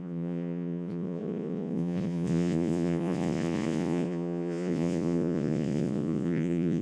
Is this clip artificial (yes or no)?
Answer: yes